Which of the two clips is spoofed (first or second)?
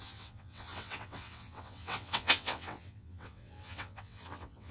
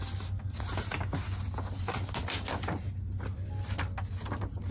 first